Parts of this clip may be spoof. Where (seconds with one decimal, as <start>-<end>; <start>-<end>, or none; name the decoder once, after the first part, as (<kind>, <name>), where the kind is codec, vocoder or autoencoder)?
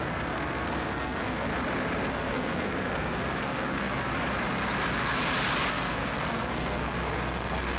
0.0-1.5 (codec, SNAC); 2.1-4.1; 5.7-7.8